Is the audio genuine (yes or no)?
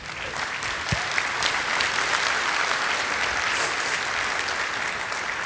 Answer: yes